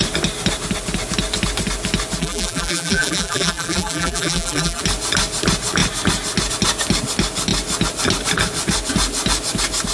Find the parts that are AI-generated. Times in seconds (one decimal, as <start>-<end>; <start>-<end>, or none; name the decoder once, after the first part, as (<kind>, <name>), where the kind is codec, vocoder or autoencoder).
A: 2.2-4.8 (vocoder, BigVGAN v2)